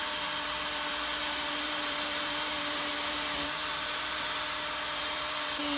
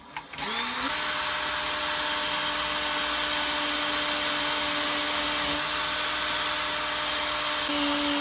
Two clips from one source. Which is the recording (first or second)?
second